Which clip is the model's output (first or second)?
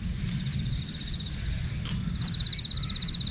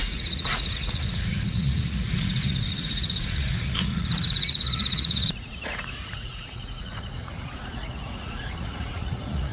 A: second